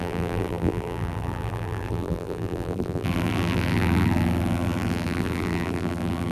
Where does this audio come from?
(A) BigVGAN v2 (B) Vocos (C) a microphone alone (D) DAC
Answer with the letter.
A